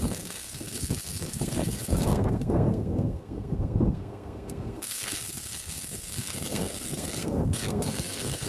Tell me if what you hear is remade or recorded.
remade